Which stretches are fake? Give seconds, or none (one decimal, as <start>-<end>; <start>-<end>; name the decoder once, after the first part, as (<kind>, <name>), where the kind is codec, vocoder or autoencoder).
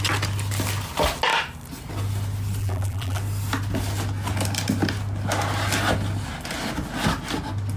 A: 2.6-3.2 (vocoder, BigVGAN v2)